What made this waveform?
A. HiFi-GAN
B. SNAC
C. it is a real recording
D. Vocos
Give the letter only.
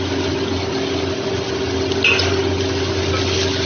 C